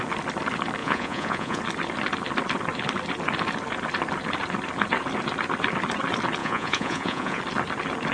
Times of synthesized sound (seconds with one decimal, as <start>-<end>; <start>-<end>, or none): 0.8-1.6; 6.4-7.4